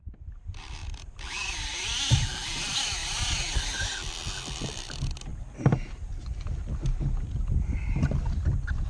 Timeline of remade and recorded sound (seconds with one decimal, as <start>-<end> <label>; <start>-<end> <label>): 0.0-3.0 recorded; 3.0-3.6 remade; 3.6-8.9 recorded